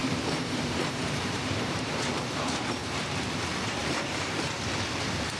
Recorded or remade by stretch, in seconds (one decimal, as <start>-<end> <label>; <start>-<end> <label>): 0.0-3.0 remade; 3.0-3.8 recorded; 3.8-4.5 remade; 4.5-5.4 recorded